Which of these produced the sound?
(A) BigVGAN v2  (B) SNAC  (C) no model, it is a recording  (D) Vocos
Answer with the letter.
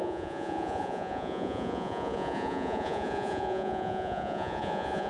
D